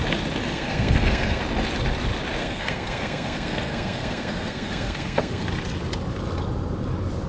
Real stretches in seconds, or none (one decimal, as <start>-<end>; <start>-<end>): 0.0-0.4; 1.4-2.4; 5.5-7.3